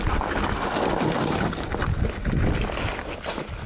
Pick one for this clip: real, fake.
real